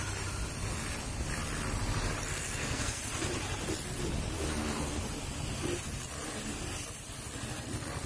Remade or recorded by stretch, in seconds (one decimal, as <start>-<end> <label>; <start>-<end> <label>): 0.0-2.3 recorded; 2.3-3.0 remade; 3.0-8.1 recorded